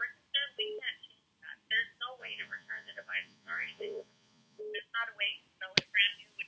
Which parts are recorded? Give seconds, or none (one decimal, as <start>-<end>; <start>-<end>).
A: 0.0-2.2; 4.6-6.5